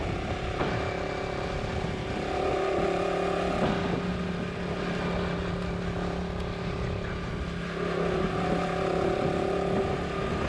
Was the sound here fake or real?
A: real